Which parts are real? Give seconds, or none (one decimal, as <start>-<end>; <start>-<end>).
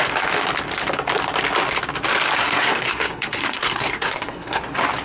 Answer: 0.0-2.4; 4.6-5.0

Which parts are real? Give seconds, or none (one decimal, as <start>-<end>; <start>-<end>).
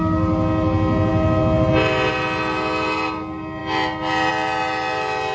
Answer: 0.0-5.3